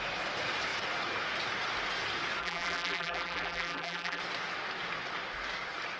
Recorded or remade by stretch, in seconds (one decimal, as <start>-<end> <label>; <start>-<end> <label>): 0.0-2.4 recorded; 2.4-4.2 remade; 4.2-6.0 recorded